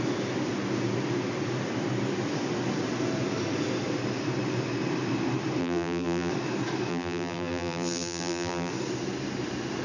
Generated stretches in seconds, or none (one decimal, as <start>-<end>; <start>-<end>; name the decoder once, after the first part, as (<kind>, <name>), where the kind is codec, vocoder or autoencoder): 5.6-6.3 (vocoder, BigVGAN v2); 6.9-8.7